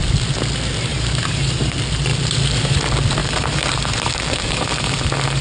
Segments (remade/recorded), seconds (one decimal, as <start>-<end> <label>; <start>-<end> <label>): 0.0-0.9 recorded; 0.9-1.7 remade; 1.7-2.1 recorded; 2.1-2.8 remade; 2.8-3.2 recorded; 3.2-4.6 remade; 4.6-5.4 recorded